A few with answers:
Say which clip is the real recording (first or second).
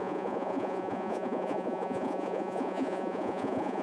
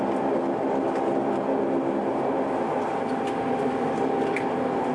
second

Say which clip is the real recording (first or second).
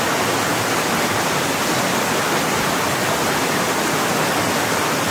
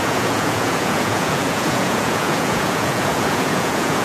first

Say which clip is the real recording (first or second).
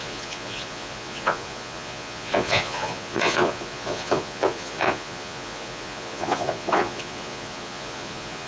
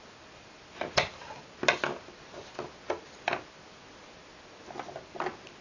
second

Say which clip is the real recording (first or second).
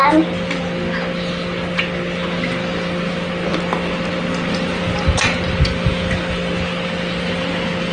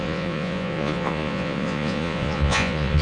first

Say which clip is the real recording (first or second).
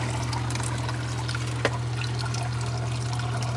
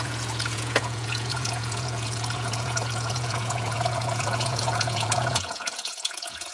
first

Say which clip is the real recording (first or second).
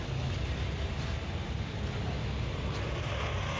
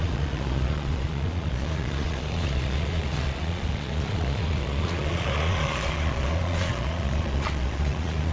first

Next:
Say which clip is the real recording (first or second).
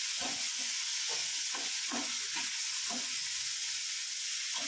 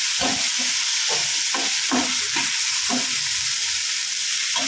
second